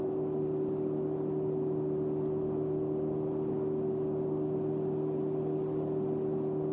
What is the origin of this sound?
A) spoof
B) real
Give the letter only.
B